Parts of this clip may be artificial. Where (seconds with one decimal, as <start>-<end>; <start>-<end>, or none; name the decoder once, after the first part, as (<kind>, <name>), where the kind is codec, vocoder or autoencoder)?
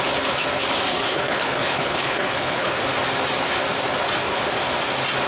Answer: 0.9-2.8 (codec, HILCodec)